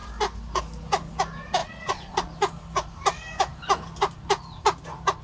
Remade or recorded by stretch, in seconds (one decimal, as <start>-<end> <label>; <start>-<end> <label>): 0.0-1.6 recorded; 1.6-2.3 remade; 2.3-5.2 recorded